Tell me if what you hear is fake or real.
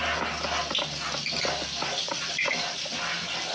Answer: real